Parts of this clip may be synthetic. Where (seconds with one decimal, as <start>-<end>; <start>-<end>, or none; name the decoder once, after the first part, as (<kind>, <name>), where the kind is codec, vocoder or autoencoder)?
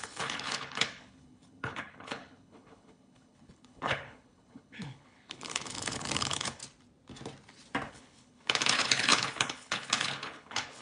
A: 0.0-6.6 (codec, HILCodec); 7.9-10.8